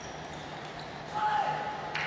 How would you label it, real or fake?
real